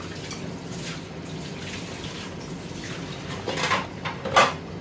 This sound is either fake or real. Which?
real